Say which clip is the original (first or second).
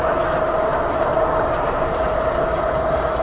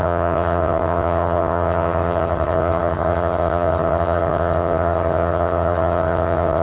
first